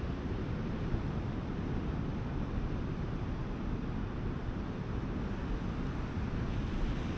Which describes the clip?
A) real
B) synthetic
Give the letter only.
A